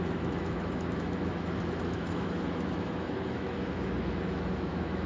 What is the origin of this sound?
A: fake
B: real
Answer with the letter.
A